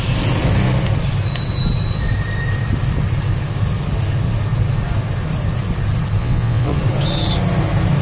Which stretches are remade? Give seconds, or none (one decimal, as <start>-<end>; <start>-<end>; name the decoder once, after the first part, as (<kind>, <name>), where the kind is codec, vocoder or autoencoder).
6.2-6.8 (vocoder, WaveNeXt)